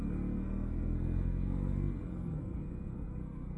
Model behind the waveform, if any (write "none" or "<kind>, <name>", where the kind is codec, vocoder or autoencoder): codec, SNAC